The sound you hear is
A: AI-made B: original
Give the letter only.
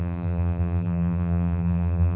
A